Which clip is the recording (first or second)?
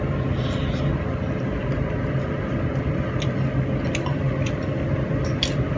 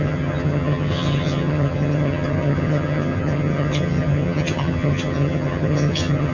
first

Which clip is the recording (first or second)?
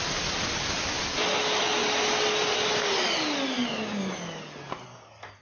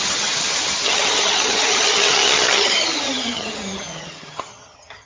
first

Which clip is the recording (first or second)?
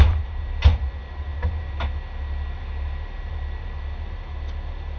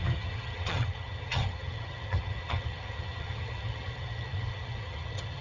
first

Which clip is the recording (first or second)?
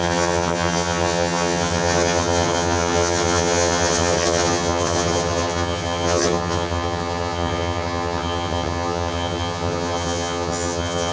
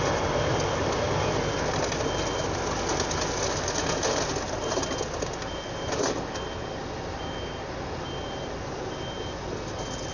second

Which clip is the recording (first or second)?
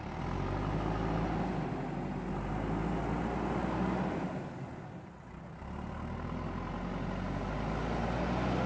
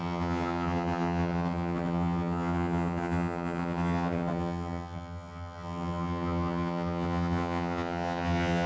first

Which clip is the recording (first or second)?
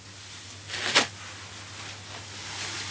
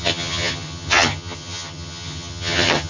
first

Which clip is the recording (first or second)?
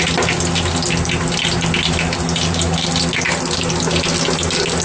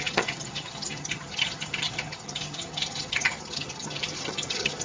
first